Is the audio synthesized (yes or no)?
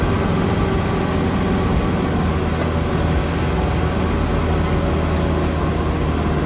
no